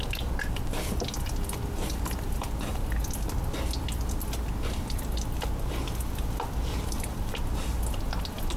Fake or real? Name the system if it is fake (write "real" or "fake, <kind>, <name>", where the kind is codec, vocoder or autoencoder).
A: real